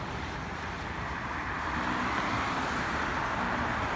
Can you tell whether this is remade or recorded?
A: recorded